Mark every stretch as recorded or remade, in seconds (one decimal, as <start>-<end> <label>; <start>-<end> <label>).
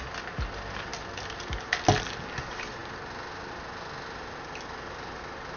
0.0-5.6 recorded